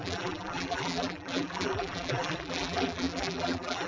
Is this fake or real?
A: fake